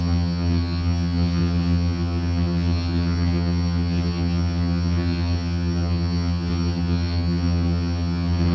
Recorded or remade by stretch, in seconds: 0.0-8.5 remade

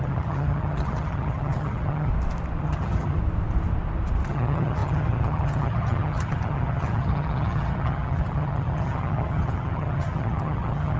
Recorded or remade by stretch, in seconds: 0.0-2.1 remade; 2.1-2.6 recorded; 2.6-3.2 remade; 3.2-4.3 recorded; 4.3-11.0 remade

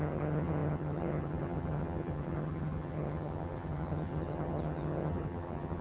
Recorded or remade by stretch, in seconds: 0.0-5.8 remade

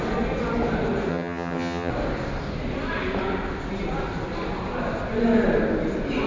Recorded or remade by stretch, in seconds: 0.0-1.1 recorded; 1.1-1.9 remade; 1.9-6.3 recorded

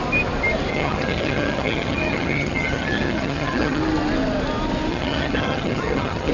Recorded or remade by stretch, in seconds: 0.0-0.7 recorded; 0.7-3.8 remade; 3.8-4.9 recorded; 4.9-6.3 remade

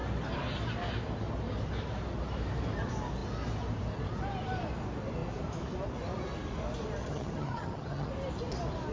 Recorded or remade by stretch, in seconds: 0.0-7.0 recorded; 7.0-8.1 remade; 8.1-8.9 recorded

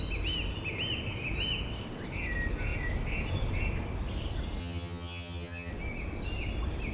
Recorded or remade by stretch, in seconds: 0.0-4.6 recorded; 4.6-5.7 remade; 5.7-6.9 recorded

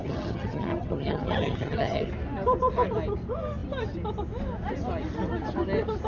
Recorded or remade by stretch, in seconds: 0.0-2.1 remade; 2.1-6.1 recorded